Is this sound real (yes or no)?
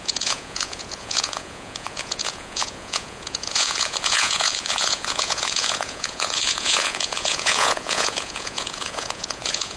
no